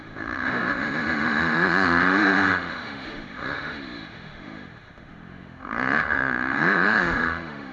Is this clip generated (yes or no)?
yes